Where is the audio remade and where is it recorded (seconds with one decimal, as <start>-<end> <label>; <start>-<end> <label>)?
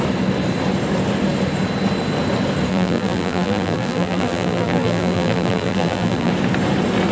0.0-2.7 recorded; 2.7-6.3 remade; 6.3-7.1 recorded